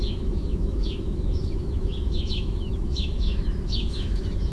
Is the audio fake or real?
fake